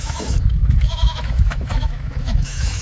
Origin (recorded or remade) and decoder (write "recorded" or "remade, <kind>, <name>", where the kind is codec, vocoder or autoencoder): remade, autoencoder, DAC-VAE